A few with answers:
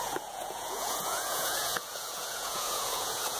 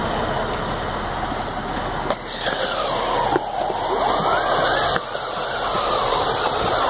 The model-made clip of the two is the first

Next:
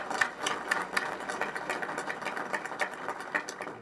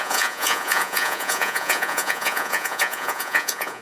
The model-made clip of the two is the second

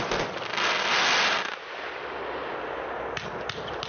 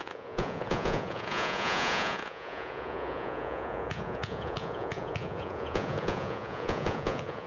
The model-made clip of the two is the second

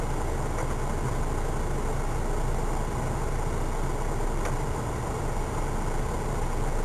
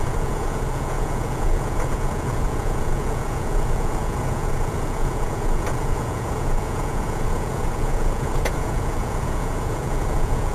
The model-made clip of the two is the second